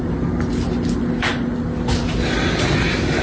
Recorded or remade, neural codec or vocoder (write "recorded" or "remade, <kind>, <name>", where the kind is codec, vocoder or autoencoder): recorded